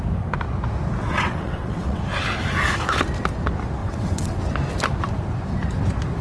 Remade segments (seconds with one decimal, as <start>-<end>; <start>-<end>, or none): 1.0-2.0; 3.8-4.4